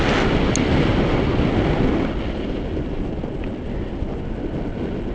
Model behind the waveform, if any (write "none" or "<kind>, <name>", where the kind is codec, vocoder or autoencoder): none